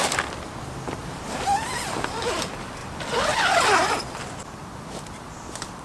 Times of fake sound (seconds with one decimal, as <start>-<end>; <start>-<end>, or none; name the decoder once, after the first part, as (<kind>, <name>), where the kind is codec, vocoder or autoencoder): 1.0-1.9 (vocoder, BigVGAN v2)